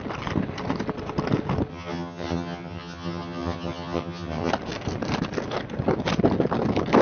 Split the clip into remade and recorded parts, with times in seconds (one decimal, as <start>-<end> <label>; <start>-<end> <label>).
0.0-1.7 recorded; 1.7-4.5 remade; 4.5-7.0 recorded